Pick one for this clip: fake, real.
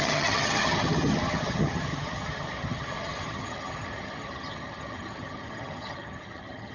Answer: fake